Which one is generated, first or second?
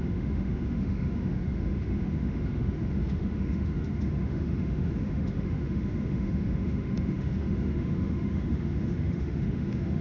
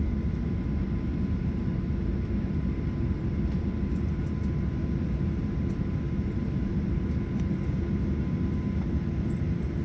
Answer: first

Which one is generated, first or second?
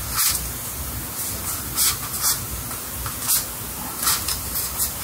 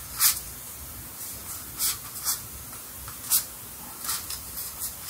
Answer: second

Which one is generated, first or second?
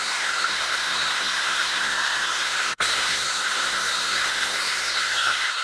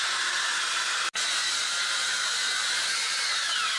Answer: first